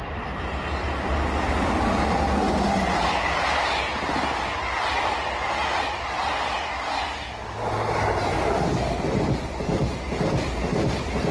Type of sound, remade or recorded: recorded